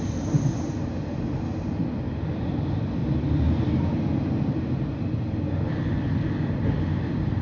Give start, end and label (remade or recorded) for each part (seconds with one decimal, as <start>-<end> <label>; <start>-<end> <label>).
0.0-3.0 remade; 3.0-4.9 recorded; 4.9-7.4 remade